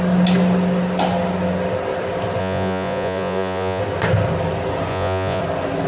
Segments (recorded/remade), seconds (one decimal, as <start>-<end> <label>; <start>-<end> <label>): 0.0-2.4 recorded; 2.4-3.8 remade; 3.8-4.9 recorded; 4.9-5.4 remade; 5.4-5.9 recorded